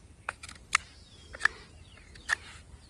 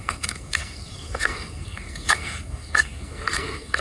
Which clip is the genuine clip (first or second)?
first